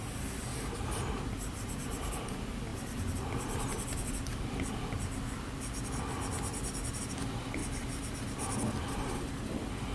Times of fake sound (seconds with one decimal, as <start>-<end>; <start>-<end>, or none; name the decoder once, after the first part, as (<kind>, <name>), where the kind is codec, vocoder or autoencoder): none